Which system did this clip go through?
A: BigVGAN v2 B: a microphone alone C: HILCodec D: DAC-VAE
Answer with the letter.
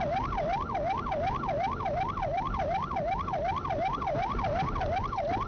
A